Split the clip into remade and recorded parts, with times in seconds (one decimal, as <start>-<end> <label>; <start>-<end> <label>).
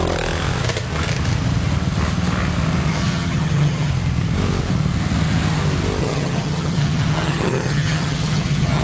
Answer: 0.0-3.0 recorded; 3.0-3.9 remade; 3.9-6.0 recorded; 6.0-8.8 remade